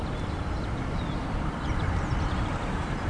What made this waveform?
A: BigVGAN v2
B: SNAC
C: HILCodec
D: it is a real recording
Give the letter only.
D